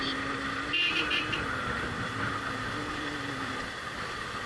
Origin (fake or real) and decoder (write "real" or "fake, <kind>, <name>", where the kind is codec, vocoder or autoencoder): real